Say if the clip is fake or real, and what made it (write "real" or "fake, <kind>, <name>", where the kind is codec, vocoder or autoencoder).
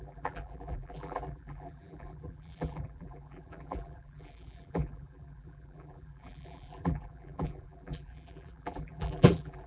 fake, vocoder, BigVGAN v2